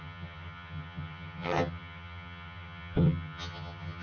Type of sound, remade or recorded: remade